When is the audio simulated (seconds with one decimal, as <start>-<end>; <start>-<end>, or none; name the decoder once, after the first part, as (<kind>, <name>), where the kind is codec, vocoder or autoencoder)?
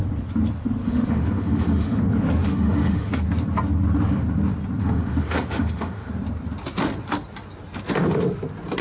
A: 0.8-2.0 (autoencoder, DAC-VAE); 2.4-3.1; 4.8-6.1